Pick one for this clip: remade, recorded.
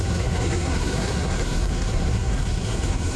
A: remade